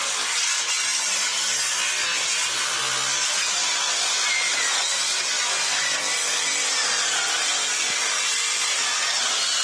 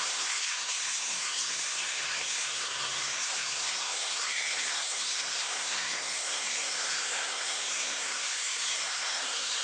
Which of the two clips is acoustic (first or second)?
first